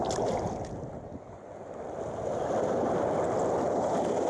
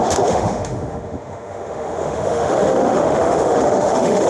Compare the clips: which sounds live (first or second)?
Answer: first